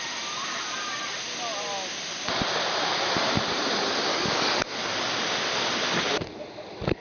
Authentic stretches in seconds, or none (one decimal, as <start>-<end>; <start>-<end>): 0.0-4.1; 4.6-7.0